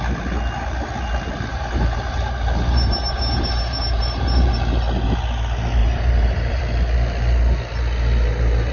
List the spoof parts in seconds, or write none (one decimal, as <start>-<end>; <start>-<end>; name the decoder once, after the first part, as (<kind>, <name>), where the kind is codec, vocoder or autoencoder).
1.5-4.5 (vocoder, BigVGAN v2); 5.8-6.6